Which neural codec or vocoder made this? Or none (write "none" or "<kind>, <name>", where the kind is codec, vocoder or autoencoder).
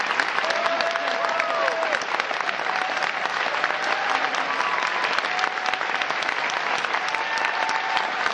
none